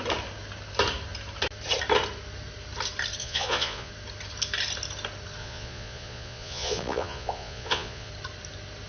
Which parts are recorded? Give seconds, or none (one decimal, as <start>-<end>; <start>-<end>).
0.0-3.2; 3.9-5.4; 8.1-8.9

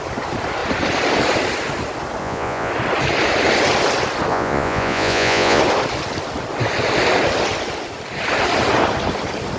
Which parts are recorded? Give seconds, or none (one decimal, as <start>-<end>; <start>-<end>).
0.0-2.2; 2.7-4.3; 5.6-9.6

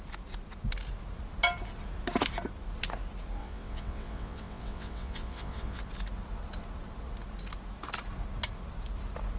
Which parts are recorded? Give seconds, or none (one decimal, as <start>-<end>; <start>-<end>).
0.0-3.4; 5.8-9.4

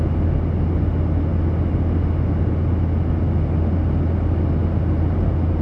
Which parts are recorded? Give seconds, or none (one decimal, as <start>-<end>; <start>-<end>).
0.0-5.6

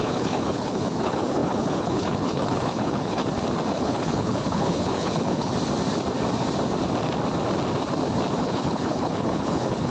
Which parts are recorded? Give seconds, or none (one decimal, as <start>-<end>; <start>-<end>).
3.2-3.7; 5.5-8.4

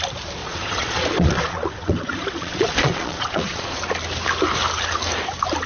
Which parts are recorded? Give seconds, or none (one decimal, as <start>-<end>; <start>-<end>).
0.0-0.4; 3.8-5.7

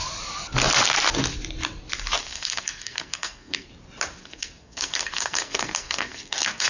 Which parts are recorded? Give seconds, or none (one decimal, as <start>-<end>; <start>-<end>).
0.0-2.2; 3.7-4.2